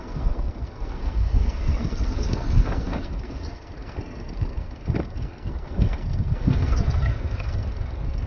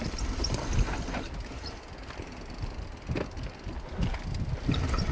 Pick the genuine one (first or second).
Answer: second